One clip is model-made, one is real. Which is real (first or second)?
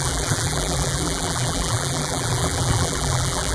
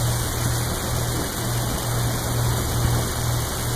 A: second